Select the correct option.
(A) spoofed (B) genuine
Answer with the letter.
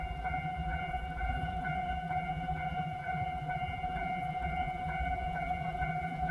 A